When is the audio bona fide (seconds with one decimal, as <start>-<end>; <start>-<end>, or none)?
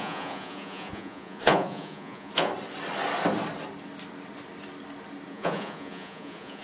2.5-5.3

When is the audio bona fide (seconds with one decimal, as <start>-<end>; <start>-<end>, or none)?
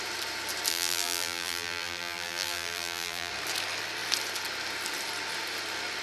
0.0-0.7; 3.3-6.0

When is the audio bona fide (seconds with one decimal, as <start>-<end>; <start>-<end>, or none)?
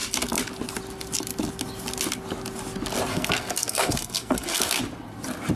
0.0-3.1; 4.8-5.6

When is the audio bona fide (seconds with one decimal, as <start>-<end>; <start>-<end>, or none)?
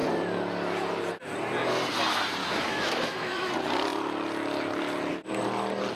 0.0-2.4; 3.5-6.0